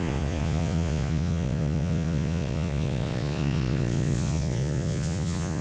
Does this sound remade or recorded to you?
remade